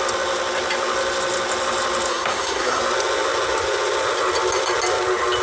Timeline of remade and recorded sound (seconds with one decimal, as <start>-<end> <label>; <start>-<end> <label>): 0.0-2.1 recorded; 2.1-2.8 remade; 2.8-5.4 recorded